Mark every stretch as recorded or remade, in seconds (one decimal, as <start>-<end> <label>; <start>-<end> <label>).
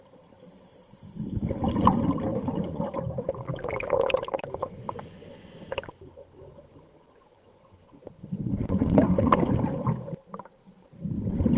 0.0-2.3 recorded; 2.3-2.8 remade; 2.8-4.6 recorded; 4.6-9.5 remade; 9.5-11.6 recorded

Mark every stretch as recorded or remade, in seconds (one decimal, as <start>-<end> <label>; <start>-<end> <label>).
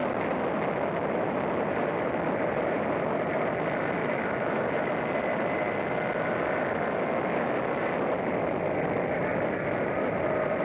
0.0-4.0 recorded; 4.0-4.6 remade; 4.6-10.6 recorded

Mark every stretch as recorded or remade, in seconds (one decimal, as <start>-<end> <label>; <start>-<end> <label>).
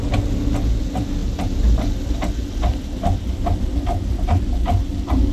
0.0-5.3 recorded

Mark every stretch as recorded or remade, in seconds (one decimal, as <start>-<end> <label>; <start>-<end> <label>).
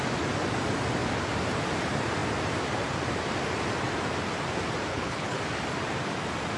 0.0-4.9 recorded; 4.9-5.4 remade; 5.4-6.6 recorded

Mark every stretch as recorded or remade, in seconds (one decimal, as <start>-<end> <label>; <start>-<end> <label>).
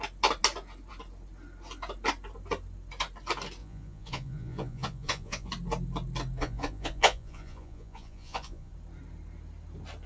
0.0-3.6 recorded; 3.6-5.5 remade; 5.5-6.4 recorded; 6.4-8.7 remade; 8.7-10.1 recorded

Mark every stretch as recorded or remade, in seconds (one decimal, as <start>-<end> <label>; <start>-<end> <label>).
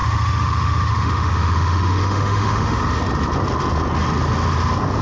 0.0-2.8 remade; 2.8-5.0 recorded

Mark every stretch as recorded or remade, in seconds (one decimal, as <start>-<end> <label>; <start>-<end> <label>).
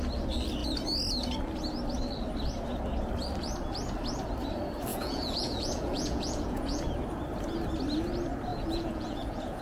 0.0-4.9 recorded; 4.9-6.8 remade; 6.8-8.5 recorded; 8.5-9.6 remade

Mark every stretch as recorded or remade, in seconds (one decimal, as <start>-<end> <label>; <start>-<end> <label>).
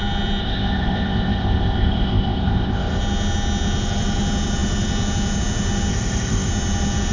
0.0-0.4 recorded; 0.4-3.0 remade; 3.0-5.9 recorded; 5.9-6.5 remade; 6.5-7.1 recorded